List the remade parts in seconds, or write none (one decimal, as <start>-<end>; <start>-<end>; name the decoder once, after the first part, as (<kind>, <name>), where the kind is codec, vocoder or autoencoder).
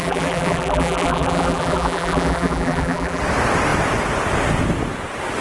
0.0-3.2 (vocoder, BigVGAN v2)